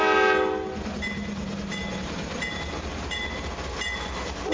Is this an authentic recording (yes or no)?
yes